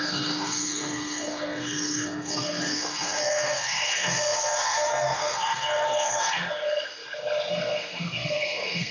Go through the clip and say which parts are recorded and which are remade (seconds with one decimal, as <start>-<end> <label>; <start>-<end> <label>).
0.0-7.0 remade; 7.0-7.5 recorded; 7.5-8.9 remade